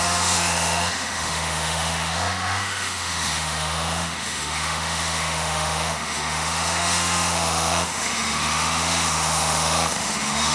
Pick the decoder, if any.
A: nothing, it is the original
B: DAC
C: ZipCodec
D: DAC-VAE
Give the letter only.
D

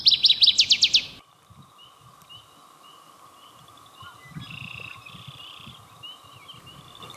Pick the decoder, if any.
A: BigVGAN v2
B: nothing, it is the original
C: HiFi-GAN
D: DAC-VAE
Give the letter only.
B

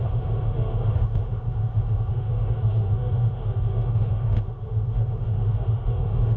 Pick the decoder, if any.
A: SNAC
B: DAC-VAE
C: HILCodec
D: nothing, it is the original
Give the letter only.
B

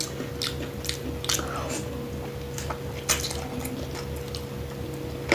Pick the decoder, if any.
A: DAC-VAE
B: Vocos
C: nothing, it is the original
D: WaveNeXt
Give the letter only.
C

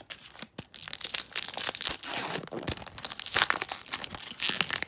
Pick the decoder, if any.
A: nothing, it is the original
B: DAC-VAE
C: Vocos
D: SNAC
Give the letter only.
A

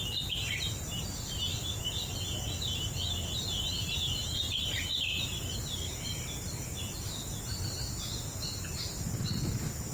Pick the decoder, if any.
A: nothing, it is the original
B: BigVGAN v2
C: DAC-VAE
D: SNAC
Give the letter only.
A